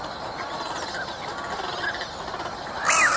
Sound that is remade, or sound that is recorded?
recorded